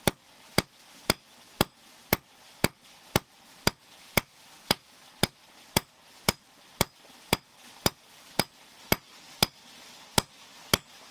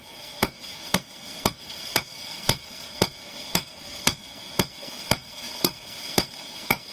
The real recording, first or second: first